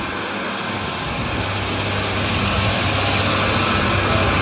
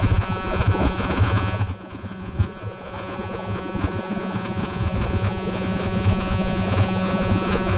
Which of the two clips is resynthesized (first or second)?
second